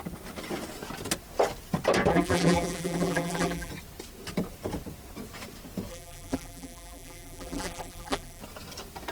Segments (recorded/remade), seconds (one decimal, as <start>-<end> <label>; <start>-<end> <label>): 0.0-2.1 recorded; 2.1-3.7 remade; 3.7-5.9 recorded; 5.9-8.4 remade; 8.4-9.1 recorded